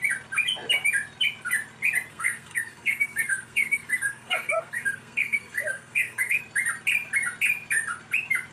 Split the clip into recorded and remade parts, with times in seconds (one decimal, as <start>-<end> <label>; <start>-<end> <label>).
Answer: 0.0-2.1 recorded; 2.1-6.4 remade; 6.4-8.5 recorded